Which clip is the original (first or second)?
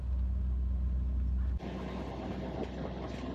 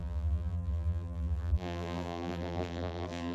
first